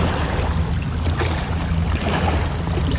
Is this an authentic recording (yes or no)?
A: yes